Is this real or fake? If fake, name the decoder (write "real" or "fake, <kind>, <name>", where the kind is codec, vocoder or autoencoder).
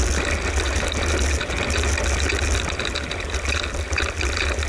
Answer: real